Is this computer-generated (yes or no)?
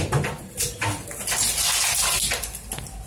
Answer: no